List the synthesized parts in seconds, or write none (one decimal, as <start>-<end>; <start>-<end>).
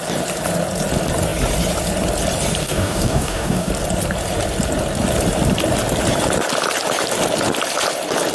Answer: 2.6-3.7